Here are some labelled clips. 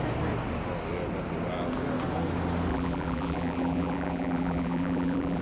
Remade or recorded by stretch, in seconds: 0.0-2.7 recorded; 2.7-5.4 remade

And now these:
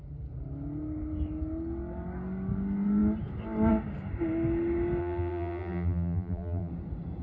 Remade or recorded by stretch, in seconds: 0.0-5.0 recorded; 5.0-6.7 remade; 6.7-7.2 recorded

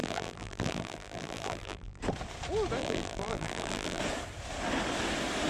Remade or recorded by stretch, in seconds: 0.0-2.0 remade; 2.0-2.8 recorded; 2.8-4.0 remade; 4.0-5.5 recorded

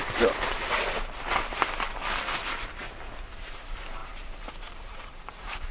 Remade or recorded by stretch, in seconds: 0.0-0.8 remade; 0.8-3.4 recorded; 3.4-4.0 remade; 4.0-4.9 recorded; 4.9-5.7 remade

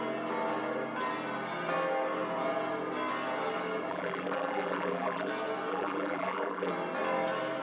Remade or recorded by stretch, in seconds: 0.0-3.9 recorded; 3.9-5.3 remade; 5.3-5.7 recorded; 5.7-6.7 remade; 6.7-7.6 recorded

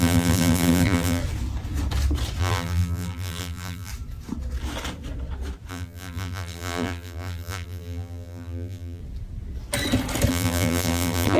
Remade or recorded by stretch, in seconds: 0.0-1.2 remade; 1.2-2.4 recorded; 2.4-3.9 remade; 3.9-5.7 recorded; 5.7-9.0 remade; 9.0-10.3 recorded; 10.3-11.4 remade